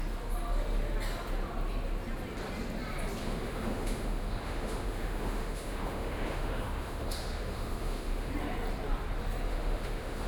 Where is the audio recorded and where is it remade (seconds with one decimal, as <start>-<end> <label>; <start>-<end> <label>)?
0.0-3.2 recorded; 3.2-8.3 remade; 8.3-9.5 recorded; 9.5-10.3 remade